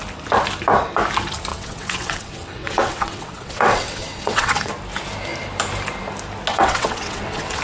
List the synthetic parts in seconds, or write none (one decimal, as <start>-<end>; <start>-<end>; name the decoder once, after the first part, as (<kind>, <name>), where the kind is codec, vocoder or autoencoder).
1.5-4.7 (vocoder, WaveNeXt); 6.5-7.6